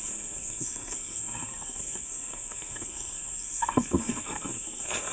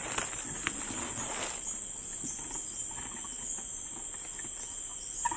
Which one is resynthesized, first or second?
first